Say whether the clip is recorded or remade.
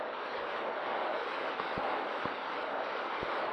remade